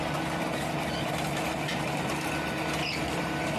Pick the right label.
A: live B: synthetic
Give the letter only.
A